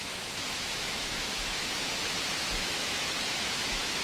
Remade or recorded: remade